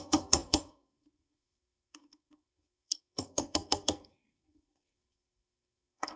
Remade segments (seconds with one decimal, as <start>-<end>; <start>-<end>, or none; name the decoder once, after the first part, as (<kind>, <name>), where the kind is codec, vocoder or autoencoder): 0.0-6.2 (codec, SNAC)

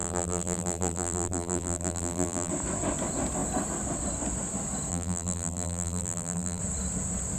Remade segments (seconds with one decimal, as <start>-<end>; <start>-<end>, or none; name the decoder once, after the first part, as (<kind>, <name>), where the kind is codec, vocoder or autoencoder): 0.0-2.5 (vocoder, BigVGAN v2); 4.9-6.6